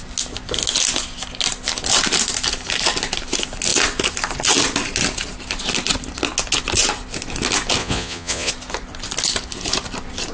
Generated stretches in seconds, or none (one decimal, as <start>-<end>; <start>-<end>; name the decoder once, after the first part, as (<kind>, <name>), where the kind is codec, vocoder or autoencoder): 7.8-8.5 (vocoder, Vocos)